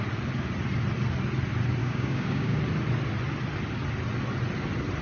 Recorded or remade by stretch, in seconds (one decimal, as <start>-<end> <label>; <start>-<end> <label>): 0.0-1.8 recorded; 1.8-2.6 remade; 2.6-5.0 recorded